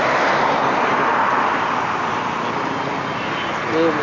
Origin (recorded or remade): recorded